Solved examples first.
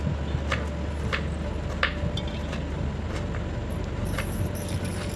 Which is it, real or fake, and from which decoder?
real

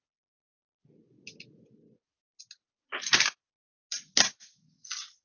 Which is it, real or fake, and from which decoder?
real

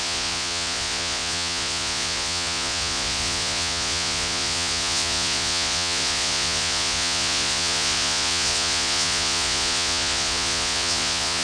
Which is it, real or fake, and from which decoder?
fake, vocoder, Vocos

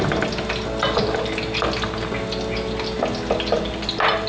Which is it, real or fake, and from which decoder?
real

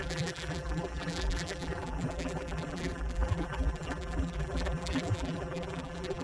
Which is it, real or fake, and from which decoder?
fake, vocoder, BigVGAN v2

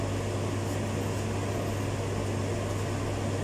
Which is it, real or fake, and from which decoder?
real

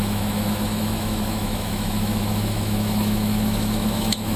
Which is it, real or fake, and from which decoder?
fake, autoencoder, DAC-VAE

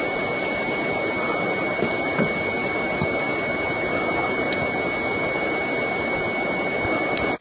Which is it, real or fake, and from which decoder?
real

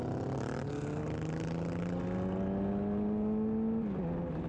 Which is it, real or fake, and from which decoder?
real